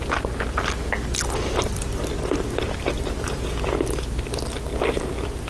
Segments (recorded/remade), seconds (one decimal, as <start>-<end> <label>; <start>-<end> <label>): 0.0-5.5 recorded